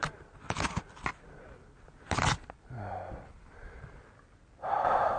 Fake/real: real